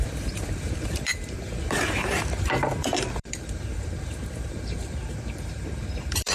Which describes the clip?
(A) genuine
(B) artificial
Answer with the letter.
B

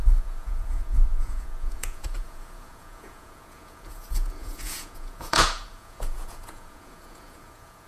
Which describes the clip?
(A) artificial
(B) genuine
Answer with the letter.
A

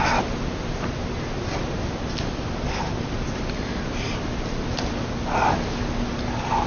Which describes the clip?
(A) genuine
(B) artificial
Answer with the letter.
A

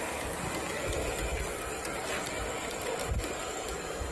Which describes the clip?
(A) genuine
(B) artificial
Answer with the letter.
A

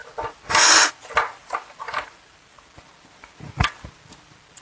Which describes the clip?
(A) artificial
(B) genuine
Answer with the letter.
B